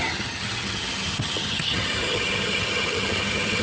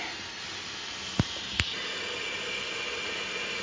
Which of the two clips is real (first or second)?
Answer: second